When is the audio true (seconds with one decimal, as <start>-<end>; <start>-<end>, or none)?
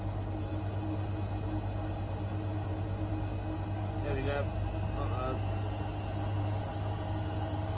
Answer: 0.0-7.8